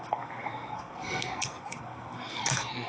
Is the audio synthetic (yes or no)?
yes